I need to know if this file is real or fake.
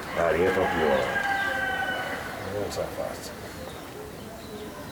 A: real